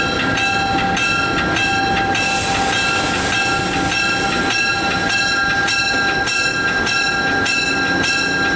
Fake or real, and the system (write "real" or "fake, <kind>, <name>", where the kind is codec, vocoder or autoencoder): real